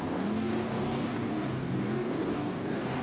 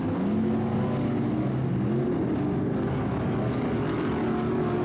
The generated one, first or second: first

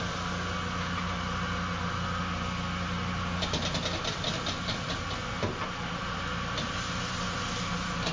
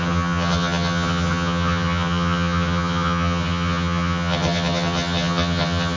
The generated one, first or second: second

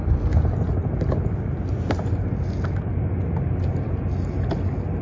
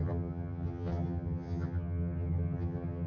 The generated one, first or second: second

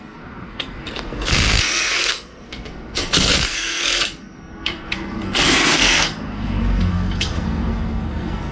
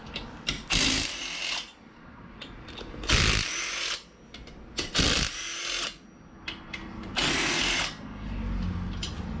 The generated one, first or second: first